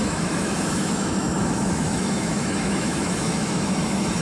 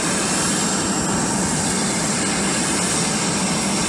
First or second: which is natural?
second